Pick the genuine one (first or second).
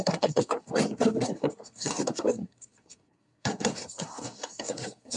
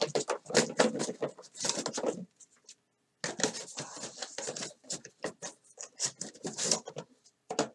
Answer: second